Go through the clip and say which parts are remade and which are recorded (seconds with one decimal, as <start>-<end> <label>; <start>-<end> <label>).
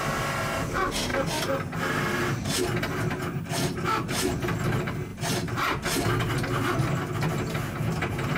0.0-8.4 recorded